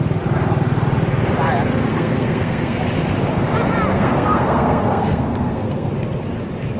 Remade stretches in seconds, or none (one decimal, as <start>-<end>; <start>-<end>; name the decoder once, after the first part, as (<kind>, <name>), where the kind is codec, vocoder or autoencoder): 1.9-2.8 (codec, SNAC); 3.9-5.9